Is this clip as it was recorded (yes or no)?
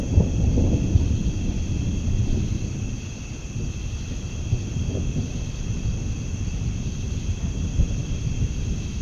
yes